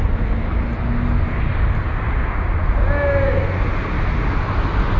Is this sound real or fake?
real